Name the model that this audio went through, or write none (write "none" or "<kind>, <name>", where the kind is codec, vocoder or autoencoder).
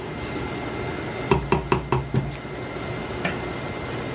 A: none